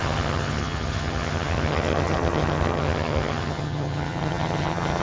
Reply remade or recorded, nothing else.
remade